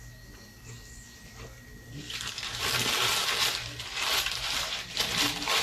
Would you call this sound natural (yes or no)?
no